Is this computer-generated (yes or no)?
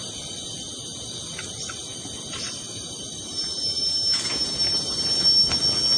no